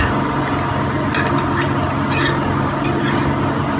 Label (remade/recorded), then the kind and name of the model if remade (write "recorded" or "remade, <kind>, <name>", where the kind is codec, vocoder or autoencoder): recorded